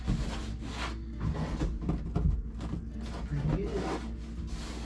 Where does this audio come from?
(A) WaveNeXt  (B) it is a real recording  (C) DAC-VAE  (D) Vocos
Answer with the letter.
B